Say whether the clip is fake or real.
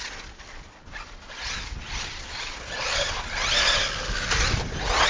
real